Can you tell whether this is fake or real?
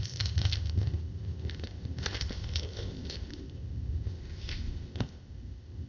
fake